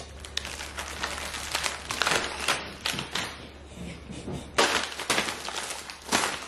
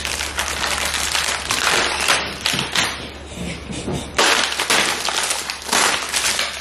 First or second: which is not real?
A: second